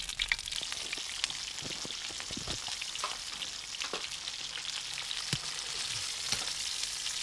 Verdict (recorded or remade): recorded